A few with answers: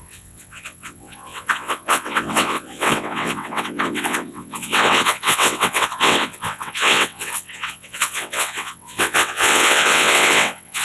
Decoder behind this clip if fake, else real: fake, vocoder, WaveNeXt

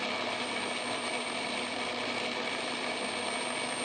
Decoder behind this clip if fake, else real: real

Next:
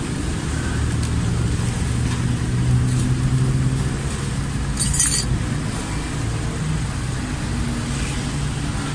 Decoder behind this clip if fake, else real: real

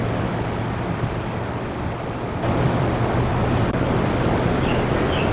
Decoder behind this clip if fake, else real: real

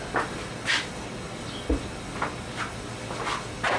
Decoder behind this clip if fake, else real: real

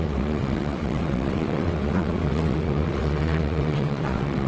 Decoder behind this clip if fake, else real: fake, vocoder, WaveNeXt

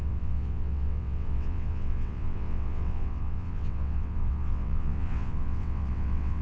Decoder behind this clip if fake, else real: fake, vocoder, WaveNeXt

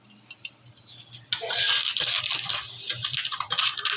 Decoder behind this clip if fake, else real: real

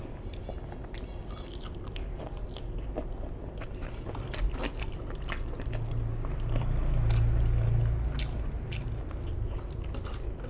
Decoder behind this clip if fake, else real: real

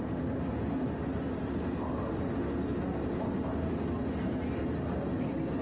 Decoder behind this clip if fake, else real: real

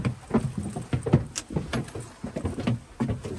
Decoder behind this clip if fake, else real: real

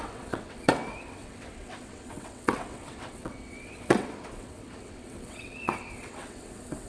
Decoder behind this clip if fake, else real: fake, vocoder, WaveNeXt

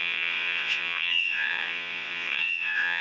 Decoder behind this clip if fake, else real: fake, vocoder, WaveNeXt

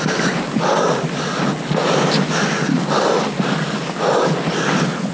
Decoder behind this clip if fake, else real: real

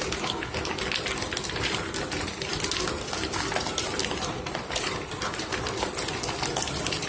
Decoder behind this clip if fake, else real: real